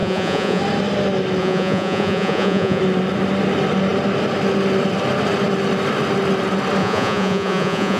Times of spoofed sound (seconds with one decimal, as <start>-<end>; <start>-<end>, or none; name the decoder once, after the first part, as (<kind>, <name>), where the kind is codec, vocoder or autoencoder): 0.0-0.6 (vocoder, Vocos); 1.4-2.8; 6.8-8.0